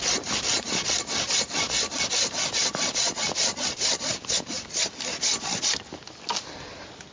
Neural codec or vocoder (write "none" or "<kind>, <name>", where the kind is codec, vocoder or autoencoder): none